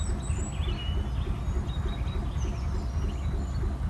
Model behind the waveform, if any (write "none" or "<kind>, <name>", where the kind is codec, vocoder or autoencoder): none